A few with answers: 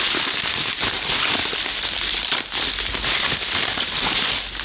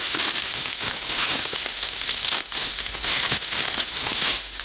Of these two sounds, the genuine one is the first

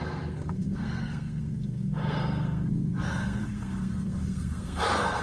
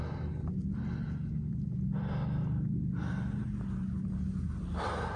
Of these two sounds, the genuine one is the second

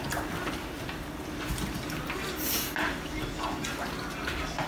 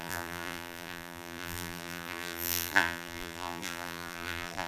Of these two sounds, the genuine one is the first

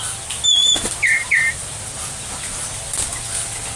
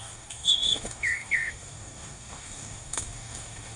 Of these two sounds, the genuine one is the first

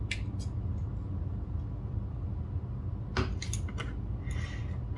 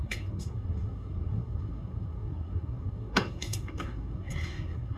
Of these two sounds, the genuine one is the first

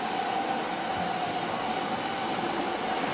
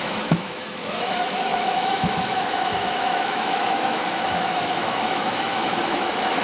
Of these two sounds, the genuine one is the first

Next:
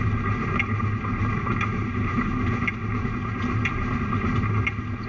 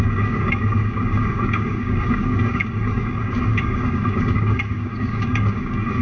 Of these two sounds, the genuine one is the first